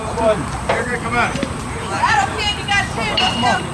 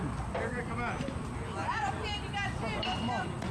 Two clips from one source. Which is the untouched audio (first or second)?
second